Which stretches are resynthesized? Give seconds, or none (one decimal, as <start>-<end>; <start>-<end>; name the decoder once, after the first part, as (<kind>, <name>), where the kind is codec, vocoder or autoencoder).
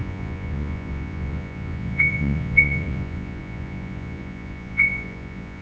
0.0-5.6 (vocoder, Vocos)